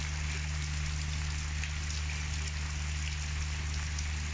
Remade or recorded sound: recorded